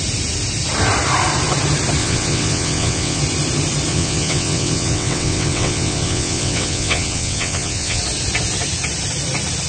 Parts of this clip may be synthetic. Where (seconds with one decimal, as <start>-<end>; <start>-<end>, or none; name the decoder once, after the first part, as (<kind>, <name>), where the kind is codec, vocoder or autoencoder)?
2.0-3.2 (vocoder, WaveNeXt); 3.9-8.0